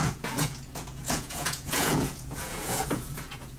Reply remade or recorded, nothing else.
remade